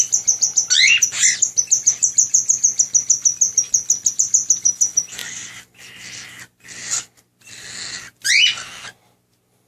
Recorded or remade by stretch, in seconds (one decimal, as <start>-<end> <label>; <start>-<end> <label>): 0.0-9.7 recorded